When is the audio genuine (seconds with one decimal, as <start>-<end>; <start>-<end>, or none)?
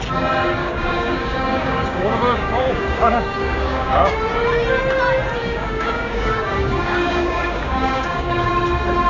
0.0-0.6; 4.1-5.4; 8.5-9.1